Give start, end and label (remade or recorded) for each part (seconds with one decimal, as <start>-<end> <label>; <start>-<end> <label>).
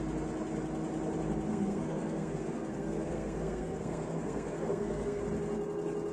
0.0-1.5 recorded; 1.5-5.2 remade; 5.2-6.1 recorded